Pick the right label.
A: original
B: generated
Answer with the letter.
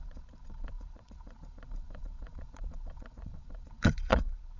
B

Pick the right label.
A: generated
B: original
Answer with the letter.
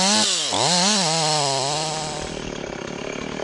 B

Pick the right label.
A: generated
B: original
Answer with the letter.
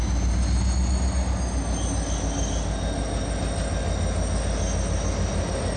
B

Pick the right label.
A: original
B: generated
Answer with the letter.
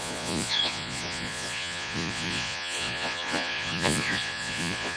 B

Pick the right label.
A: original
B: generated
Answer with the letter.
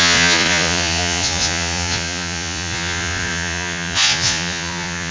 B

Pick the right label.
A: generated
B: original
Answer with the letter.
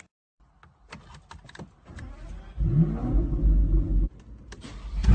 B